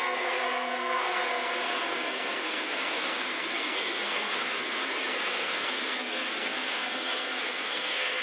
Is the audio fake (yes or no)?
yes